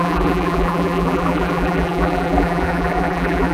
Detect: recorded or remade remade